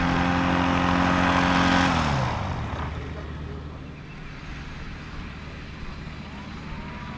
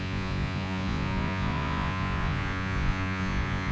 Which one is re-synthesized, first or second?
second